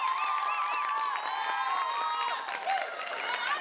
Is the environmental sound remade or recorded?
recorded